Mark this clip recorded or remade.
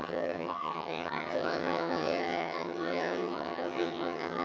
remade